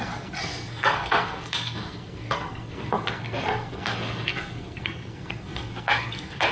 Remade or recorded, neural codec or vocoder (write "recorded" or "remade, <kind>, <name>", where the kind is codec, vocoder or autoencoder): remade, codec, SNAC